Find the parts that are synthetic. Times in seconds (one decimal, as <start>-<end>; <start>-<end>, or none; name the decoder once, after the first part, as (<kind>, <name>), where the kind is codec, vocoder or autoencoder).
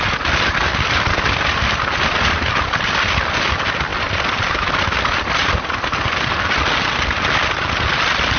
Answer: none